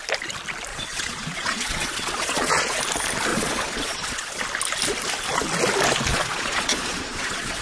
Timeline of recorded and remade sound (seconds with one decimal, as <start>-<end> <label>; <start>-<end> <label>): 0.0-0.7 recorded; 0.7-2.8 remade; 2.8-3.3 recorded; 3.3-4.4 remade; 4.4-6.1 recorded; 6.1-7.6 remade

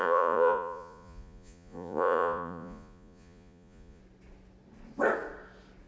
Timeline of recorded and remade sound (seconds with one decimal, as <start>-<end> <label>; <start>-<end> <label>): 0.0-4.0 remade; 4.0-5.9 recorded

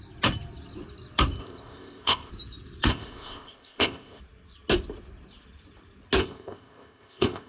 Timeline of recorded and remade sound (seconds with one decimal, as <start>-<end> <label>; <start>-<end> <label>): 0.0-1.4 recorded; 1.4-2.3 remade; 2.3-2.9 recorded; 2.9-4.2 remade; 4.2-6.2 recorded; 6.2-7.5 remade